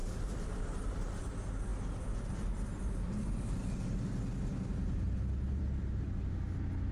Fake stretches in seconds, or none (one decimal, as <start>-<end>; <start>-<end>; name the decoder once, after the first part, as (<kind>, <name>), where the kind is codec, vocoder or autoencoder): none